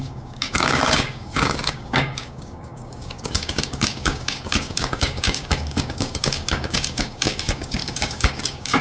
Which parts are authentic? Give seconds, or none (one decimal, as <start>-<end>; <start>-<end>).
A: none